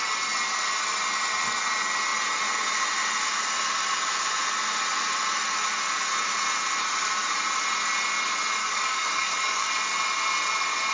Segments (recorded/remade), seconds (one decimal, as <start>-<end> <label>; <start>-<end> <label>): 0.0-8.6 recorded; 8.6-9.7 remade; 9.7-10.9 recorded

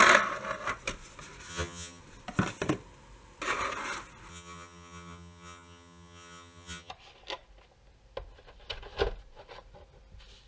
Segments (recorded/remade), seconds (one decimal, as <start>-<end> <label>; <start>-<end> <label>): 0.0-1.5 recorded; 1.5-2.0 remade; 2.0-4.3 recorded; 4.3-6.9 remade; 6.9-10.5 recorded

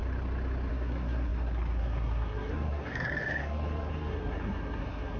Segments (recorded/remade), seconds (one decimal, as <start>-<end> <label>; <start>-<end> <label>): 0.0-0.7 recorded; 0.7-5.2 remade

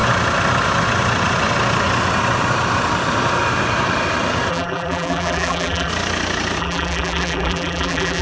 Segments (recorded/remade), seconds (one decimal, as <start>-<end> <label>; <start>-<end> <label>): 0.0-4.5 recorded; 4.5-5.9 remade; 5.9-6.6 recorded; 6.6-8.2 remade